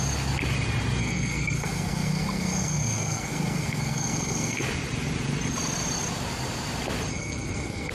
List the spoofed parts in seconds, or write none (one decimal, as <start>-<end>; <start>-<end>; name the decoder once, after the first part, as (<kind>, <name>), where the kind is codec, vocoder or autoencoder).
1.0-4.6 (codec, SNAC); 7.1-7.9